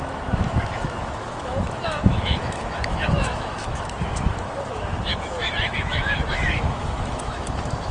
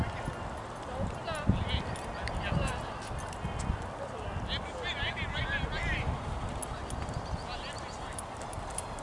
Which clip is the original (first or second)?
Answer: second